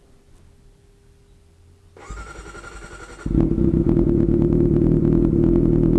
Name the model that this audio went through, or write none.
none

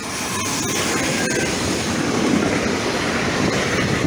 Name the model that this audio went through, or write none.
none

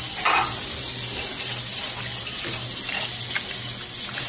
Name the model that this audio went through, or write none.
none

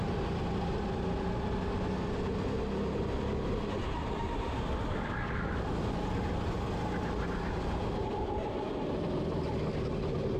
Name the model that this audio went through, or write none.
none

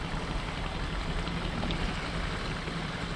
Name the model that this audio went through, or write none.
none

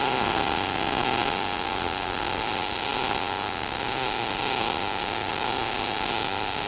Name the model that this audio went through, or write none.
none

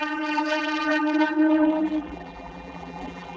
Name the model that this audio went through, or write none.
vocoder, BigVGAN v2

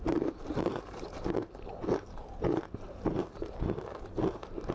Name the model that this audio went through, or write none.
vocoder, BigVGAN v2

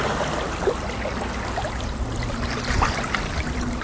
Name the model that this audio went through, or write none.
none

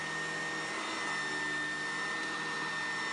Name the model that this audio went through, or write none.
none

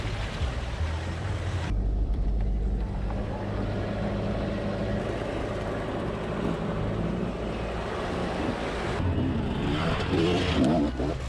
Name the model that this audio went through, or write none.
none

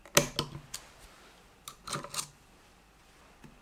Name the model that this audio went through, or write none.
none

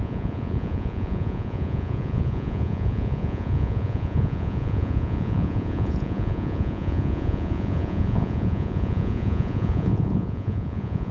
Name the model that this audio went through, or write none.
vocoder, Vocos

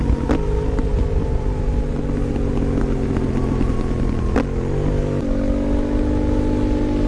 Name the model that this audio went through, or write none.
none